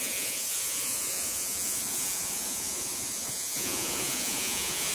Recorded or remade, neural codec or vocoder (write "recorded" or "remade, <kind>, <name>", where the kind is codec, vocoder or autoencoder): remade, vocoder, Vocos